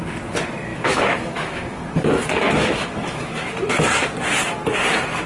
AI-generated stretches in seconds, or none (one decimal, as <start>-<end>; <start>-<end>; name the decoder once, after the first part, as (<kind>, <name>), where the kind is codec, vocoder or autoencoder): 0.7-1.9 (autoencoder, DAC-VAE); 2.4-3.5